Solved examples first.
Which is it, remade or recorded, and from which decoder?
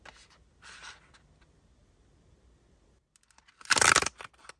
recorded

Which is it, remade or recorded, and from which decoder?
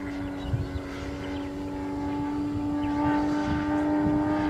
recorded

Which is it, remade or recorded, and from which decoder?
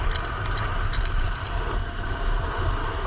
remade, vocoder, BigVGAN v2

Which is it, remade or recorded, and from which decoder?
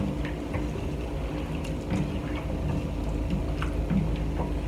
recorded